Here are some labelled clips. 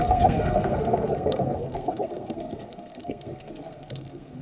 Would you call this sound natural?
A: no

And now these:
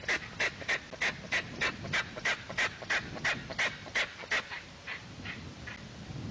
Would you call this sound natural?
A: yes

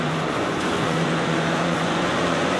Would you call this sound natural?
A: no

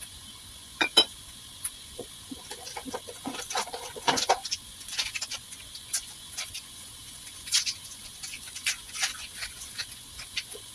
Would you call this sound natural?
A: no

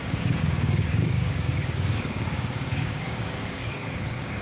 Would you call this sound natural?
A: no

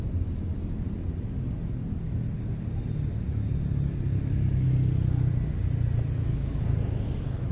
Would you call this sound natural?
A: yes